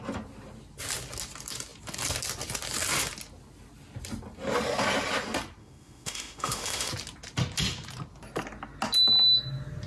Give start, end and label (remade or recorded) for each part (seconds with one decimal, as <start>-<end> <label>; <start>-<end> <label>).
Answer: 0.0-5.6 recorded; 5.6-6.9 remade; 6.9-9.9 recorded